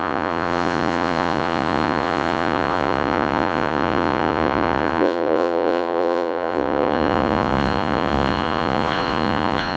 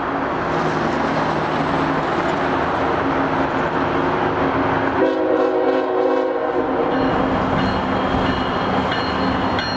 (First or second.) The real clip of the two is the second